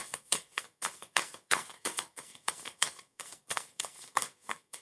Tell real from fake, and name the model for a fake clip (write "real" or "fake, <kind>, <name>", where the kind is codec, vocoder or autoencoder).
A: fake, codec, SNAC